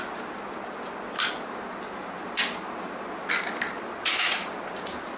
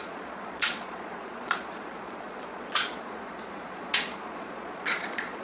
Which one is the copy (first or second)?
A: second